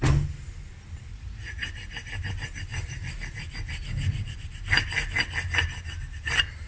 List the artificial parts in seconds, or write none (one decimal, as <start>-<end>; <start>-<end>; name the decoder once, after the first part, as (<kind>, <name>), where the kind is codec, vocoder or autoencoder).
1.1-1.7 (vocoder, Vocos)